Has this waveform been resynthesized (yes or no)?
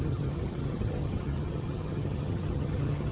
yes